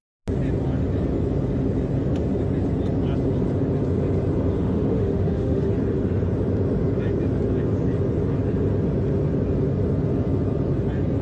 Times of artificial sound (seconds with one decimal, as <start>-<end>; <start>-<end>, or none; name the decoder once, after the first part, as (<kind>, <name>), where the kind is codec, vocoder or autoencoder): 4.6-5.7 (autoencoder, DAC-VAE)